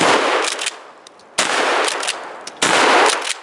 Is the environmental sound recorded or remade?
recorded